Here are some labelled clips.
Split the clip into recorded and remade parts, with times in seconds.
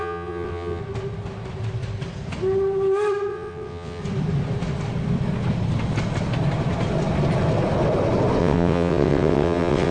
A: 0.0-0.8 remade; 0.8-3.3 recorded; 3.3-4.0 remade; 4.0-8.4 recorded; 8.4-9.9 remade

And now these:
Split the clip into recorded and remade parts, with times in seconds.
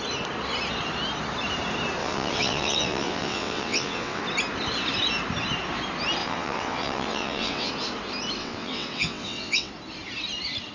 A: 0.0-2.0 recorded; 2.0-4.2 remade; 4.2-6.2 recorded; 6.2-7.7 remade; 7.7-8.4 recorded; 8.4-9.7 remade; 9.7-10.7 recorded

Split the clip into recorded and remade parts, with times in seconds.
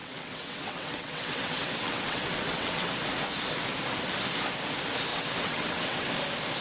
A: 0.0-2.9 remade; 2.9-5.1 recorded; 5.1-6.1 remade; 6.1-6.6 recorded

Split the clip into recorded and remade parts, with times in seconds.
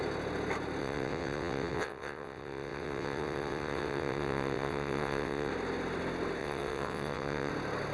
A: 0.0-0.8 recorded; 0.8-5.5 remade; 5.5-6.4 recorded; 6.4-7.5 remade; 7.5-7.9 recorded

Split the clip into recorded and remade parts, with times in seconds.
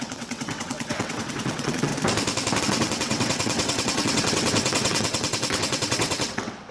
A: 0.0-1.9 remade; 1.9-2.6 recorded; 2.6-6.7 remade